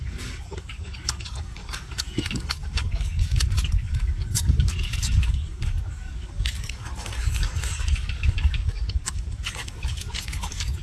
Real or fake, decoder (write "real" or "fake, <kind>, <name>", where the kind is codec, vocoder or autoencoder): fake, codec, DAC